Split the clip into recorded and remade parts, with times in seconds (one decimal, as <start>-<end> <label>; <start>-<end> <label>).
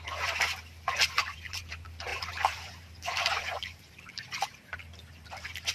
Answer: 0.0-1.2 recorded; 1.2-1.7 remade; 1.7-2.1 recorded; 2.1-4.7 remade; 4.7-5.7 recorded